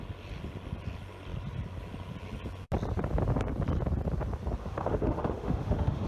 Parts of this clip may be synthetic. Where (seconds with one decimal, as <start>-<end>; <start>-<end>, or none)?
4.6-6.1